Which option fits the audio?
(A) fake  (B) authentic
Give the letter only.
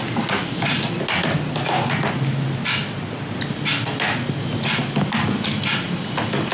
B